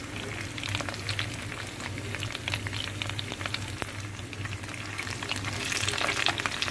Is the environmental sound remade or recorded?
recorded